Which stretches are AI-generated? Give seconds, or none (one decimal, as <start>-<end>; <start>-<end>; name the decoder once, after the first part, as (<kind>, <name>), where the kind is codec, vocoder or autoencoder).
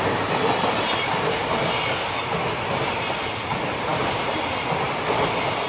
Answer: none